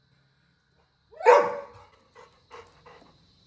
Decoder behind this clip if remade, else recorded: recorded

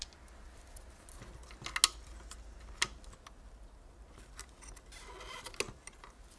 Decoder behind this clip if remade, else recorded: recorded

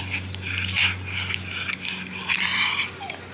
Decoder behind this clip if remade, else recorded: recorded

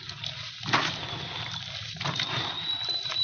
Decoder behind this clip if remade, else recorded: recorded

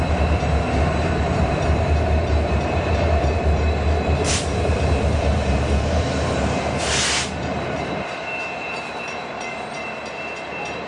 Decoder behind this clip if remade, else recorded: remade, vocoder, BigVGAN v2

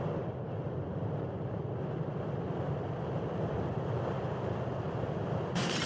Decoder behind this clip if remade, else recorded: recorded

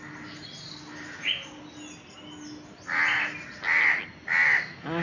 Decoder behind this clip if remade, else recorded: recorded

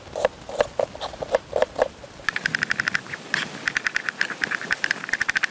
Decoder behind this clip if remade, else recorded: recorded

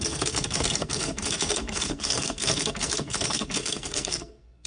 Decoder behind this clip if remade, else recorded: remade, codec, SNAC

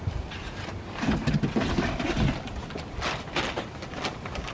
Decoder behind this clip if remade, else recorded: recorded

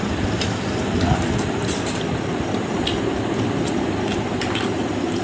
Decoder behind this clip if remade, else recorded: recorded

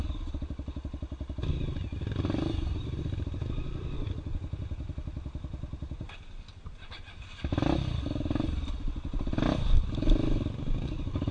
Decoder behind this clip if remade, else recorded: remade, vocoder, BigVGAN v2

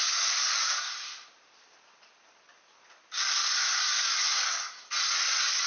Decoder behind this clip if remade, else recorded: recorded